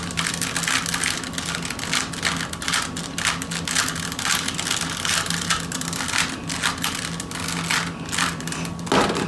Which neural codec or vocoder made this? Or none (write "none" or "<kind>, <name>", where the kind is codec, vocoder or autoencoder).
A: none